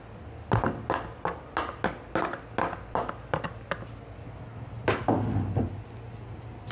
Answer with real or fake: real